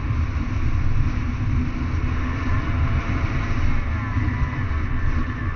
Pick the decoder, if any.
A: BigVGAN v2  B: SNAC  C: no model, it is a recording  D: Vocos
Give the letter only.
C